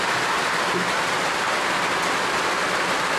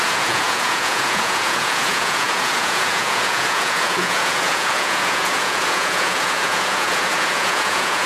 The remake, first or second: second